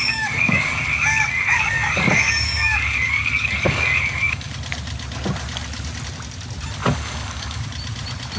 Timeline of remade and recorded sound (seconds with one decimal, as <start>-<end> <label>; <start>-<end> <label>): 0.0-4.5 remade; 4.5-6.8 recorded; 6.8-7.6 remade; 7.6-8.4 recorded